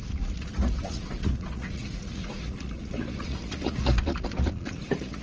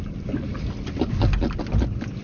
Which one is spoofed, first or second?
first